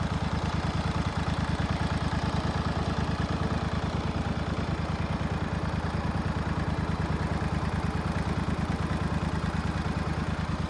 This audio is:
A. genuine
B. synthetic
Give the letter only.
A